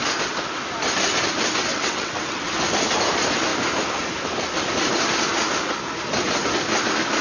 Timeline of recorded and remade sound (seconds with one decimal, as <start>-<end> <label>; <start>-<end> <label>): 0.0-1.7 recorded; 1.7-2.5 remade; 2.5-7.2 recorded